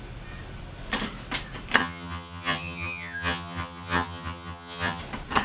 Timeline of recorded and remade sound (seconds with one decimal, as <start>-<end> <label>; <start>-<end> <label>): 0.0-1.8 recorded; 1.8-5.0 remade; 5.0-5.4 recorded